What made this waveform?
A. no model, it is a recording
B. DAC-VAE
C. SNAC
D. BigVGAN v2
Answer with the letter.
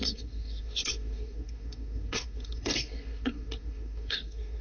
C